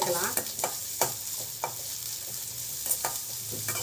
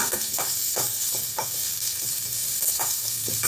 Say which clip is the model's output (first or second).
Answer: second